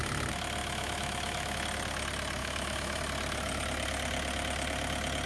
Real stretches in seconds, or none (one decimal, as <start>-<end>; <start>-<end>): 0.0-0.6; 1.6-2.4; 3.0-5.3

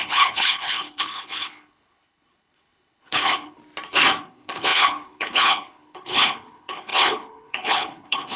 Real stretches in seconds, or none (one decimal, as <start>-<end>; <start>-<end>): 3.6-4.2

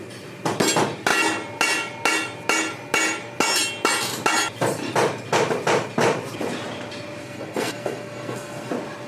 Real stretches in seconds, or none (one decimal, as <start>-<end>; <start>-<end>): 0.0-7.2; 8.7-9.1

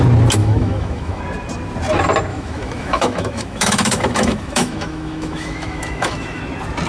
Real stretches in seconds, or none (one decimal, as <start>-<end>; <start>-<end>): 0.0-0.4; 1.2-2.3; 6.4-6.9